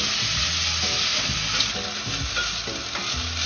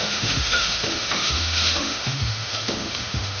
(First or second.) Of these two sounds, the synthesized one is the second